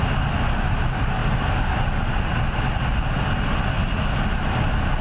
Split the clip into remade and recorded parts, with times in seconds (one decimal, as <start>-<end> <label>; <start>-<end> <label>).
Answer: 0.0-5.0 recorded